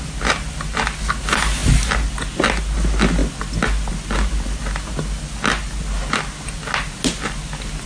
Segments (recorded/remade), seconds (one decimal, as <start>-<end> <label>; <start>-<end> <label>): 0.0-7.9 recorded